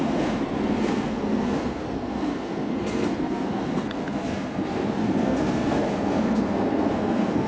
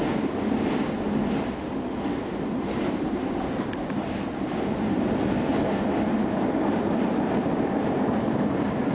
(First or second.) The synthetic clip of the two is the first